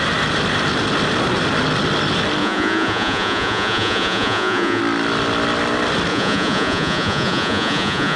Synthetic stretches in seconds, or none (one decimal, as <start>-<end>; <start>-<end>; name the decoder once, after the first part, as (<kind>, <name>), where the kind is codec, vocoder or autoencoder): 2.4-4.8 (vocoder, Vocos); 6.1-8.2